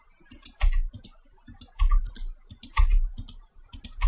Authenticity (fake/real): real